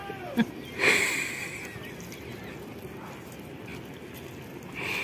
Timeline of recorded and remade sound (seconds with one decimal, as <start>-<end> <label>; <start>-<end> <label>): 0.0-5.0 recorded